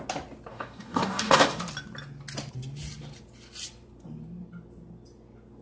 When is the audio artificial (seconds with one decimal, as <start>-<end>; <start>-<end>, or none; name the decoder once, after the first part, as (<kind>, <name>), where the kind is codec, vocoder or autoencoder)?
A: 0.5-1.6 (codec, DAC)